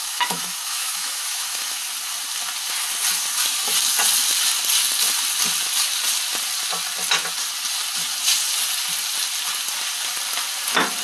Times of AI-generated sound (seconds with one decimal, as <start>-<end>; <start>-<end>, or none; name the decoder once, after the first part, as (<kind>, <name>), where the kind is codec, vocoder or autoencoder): 0.0-1.9 (autoencoder, DAC-VAE)